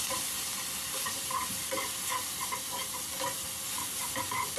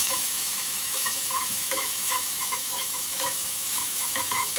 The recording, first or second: first